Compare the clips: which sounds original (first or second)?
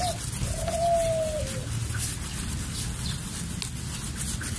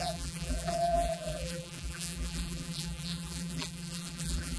first